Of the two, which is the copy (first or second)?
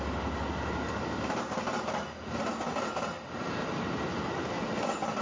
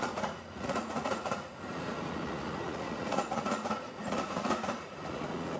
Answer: second